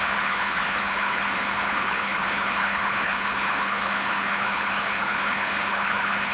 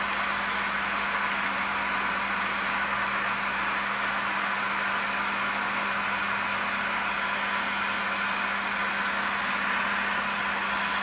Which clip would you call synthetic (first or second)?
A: first